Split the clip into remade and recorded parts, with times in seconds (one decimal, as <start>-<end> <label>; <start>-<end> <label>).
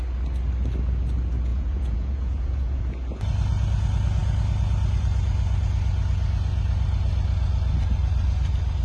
0.0-1.5 recorded; 1.5-2.8 remade; 2.8-8.8 recorded